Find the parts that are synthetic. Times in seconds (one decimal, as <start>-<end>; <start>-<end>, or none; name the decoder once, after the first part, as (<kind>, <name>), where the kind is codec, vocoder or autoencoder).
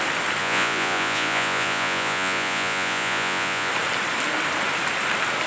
0.4-3.7 (vocoder, Vocos)